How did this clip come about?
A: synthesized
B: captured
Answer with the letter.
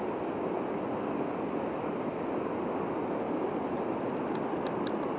B